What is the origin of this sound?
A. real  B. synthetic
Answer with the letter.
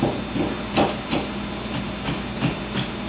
A